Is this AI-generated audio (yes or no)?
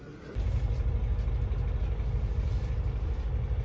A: no